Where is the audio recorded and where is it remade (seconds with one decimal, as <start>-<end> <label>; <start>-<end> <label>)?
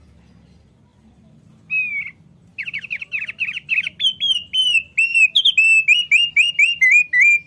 0.0-7.5 recorded